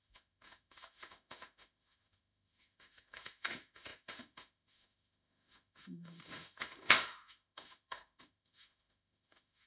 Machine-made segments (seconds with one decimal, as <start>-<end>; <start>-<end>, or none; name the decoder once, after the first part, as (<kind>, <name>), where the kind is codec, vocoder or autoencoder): 0.0-9.7 (autoencoder, DAC-VAE)